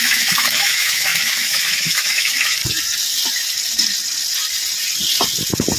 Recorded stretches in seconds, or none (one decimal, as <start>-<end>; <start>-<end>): 2.6-5.8

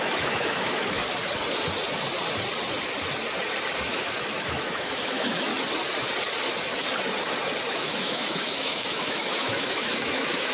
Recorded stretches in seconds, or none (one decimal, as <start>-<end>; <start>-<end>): 1.0-3.8; 5.5-7.7